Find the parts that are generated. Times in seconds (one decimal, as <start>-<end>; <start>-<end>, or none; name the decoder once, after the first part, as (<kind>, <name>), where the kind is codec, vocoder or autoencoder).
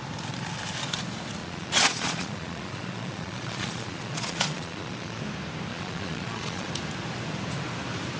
1.4-5.2 (vocoder, Vocos); 5.7-6.7